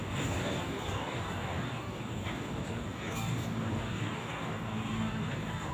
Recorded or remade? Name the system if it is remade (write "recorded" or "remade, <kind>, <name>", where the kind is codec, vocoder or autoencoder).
remade, codec, DAC